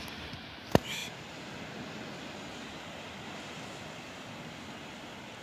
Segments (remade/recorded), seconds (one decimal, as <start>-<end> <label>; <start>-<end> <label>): 0.0-5.4 recorded